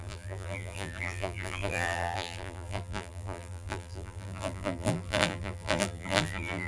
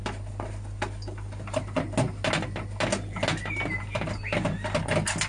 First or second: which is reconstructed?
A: first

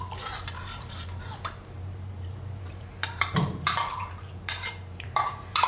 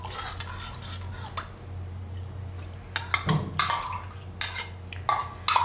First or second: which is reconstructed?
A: first